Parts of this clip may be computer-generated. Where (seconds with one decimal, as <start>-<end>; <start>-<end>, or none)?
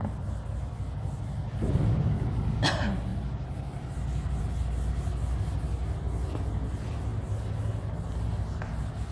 none